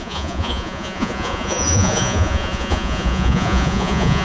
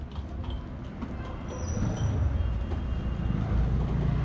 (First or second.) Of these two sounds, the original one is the second